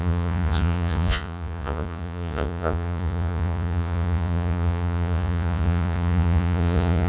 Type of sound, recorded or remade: remade